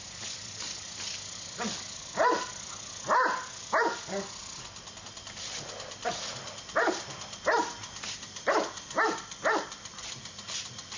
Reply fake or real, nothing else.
real